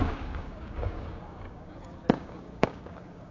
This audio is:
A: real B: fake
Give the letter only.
B